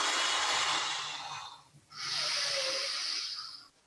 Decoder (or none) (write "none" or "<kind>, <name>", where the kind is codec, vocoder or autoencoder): none